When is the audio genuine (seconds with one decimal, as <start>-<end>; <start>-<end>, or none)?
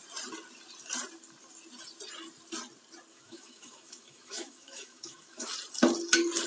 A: 0.0-3.1; 5.5-6.5